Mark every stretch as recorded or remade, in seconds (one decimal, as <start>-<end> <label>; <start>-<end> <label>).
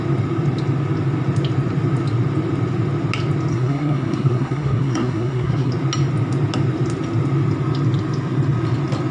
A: 0.0-3.5 recorded; 3.5-5.7 remade; 5.7-9.1 recorded